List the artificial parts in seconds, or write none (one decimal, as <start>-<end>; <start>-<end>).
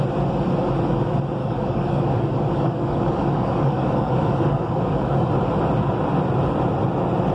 1.4-5.3